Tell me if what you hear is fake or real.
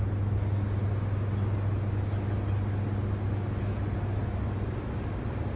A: real